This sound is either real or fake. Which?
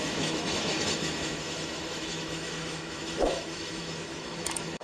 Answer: fake